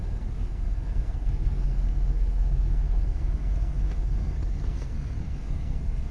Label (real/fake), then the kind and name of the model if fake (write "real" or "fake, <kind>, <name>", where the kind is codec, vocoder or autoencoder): fake, codec, SNAC